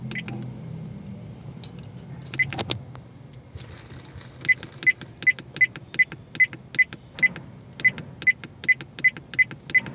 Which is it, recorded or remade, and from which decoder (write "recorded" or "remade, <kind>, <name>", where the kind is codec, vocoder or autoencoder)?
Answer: recorded